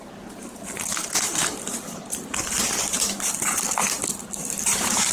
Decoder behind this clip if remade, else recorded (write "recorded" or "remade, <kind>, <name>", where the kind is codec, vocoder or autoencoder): recorded